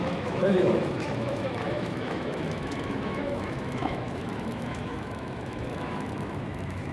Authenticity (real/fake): fake